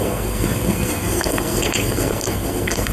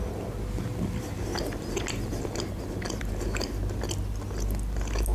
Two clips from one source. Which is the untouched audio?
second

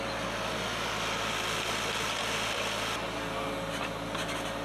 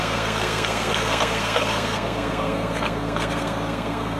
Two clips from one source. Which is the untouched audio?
first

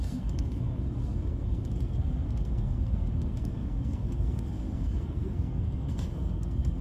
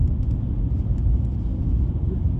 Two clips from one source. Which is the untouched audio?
second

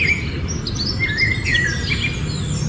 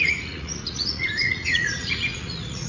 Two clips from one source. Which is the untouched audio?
first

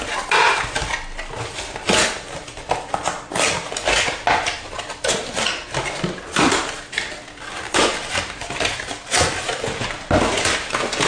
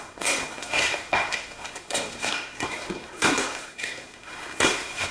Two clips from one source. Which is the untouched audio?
first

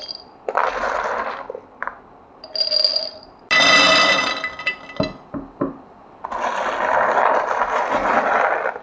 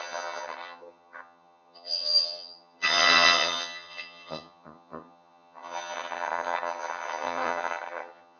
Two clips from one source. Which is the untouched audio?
first